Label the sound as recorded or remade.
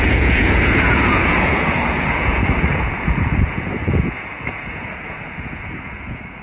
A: remade